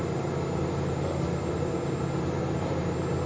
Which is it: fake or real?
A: real